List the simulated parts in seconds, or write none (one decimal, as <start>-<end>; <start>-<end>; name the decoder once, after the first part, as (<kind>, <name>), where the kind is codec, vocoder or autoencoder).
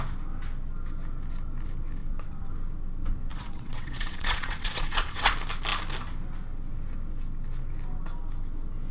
2.0-2.5 (vocoder, WaveNeXt); 3.3-5.3